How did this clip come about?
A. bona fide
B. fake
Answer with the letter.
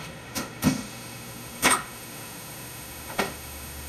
B